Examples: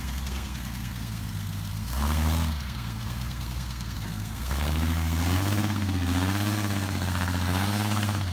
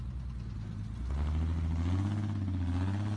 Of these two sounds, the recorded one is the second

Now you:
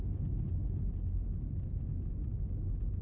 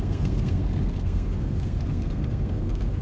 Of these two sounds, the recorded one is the first